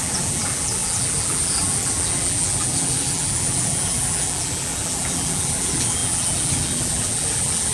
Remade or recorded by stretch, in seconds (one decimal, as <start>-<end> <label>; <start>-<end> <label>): 0.0-7.7 remade